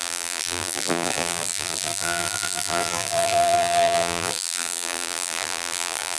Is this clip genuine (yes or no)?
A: no